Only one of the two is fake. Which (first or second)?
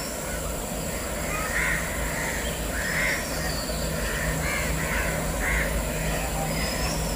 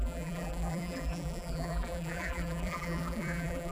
second